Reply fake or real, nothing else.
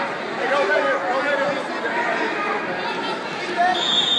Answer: real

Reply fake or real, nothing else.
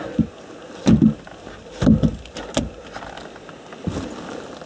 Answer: real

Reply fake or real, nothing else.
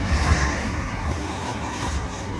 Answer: fake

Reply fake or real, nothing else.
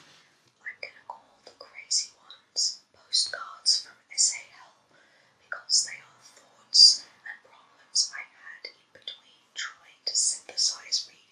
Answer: fake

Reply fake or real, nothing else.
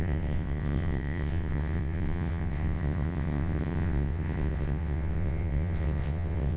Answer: fake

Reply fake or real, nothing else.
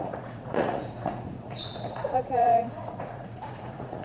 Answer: fake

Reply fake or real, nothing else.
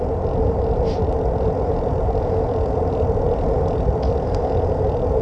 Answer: real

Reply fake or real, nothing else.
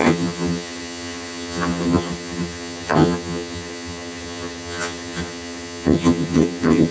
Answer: fake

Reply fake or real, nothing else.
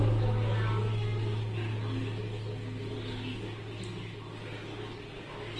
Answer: real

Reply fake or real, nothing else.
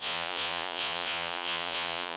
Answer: fake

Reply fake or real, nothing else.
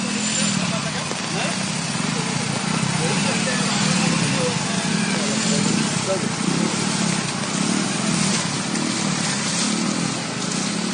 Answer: real